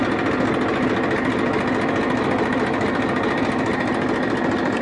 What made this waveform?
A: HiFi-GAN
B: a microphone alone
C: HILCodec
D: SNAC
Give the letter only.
B